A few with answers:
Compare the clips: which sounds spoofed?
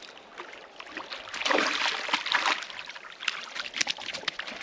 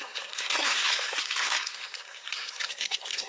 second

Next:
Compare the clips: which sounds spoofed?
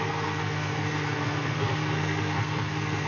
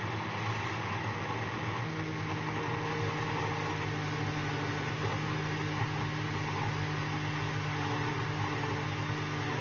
first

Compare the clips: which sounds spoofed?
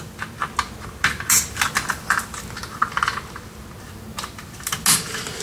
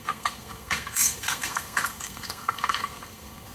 second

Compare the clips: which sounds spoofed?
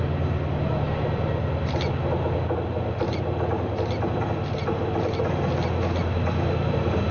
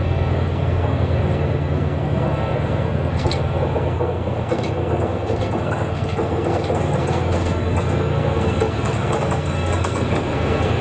second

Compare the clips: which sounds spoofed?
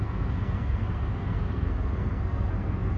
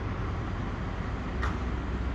first